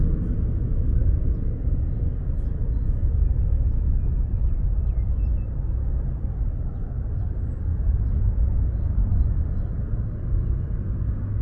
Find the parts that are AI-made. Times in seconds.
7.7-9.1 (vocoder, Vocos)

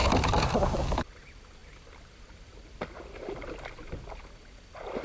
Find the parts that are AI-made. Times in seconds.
0.0-0.8 (vocoder, BigVGAN v2); 1.6-3.6